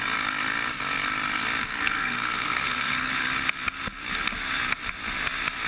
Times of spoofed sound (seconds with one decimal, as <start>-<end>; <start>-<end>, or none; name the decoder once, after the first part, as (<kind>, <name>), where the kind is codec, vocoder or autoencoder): 1.6-3.1 (codec, SNAC)